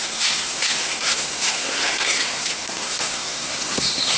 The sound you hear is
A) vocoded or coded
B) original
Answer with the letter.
A